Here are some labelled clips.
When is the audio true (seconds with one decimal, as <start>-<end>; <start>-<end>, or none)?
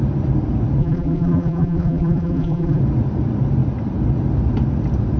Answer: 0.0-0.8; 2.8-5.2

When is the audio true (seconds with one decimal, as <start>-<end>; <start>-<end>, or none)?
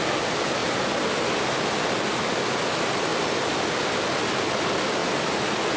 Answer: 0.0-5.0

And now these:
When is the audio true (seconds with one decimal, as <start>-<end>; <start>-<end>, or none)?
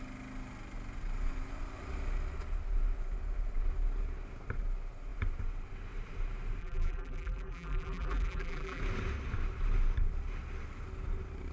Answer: 0.0-6.6; 8.8-11.5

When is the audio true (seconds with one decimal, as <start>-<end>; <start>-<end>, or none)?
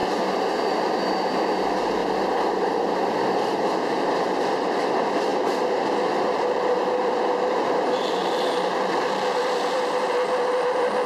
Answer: 0.0-2.0; 2.9-8.2; 10.4-11.1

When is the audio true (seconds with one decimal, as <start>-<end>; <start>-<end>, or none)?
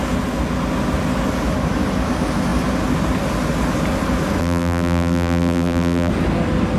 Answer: 0.0-4.4; 6.1-6.8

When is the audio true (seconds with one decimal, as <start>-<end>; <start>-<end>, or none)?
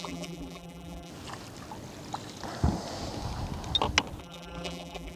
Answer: 1.1-4.2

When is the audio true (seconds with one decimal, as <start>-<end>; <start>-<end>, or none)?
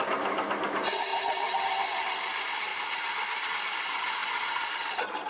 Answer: 0.0-1.1; 1.6-2.7; 3.5-5.3